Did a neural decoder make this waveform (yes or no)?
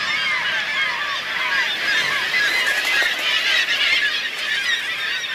no